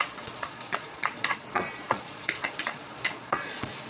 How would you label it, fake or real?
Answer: fake